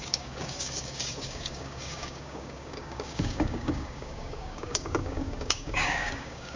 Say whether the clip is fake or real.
fake